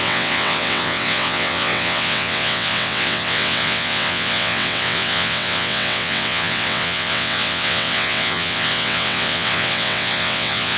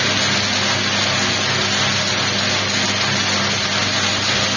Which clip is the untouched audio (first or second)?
second